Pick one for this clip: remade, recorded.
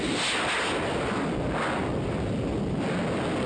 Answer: recorded